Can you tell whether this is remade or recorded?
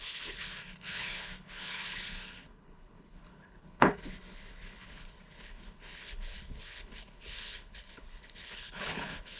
remade